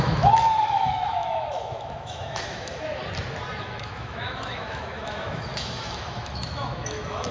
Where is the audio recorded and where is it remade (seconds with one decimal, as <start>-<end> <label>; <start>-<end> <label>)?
0.0-3.0 remade; 3.0-3.6 recorded; 3.6-7.3 remade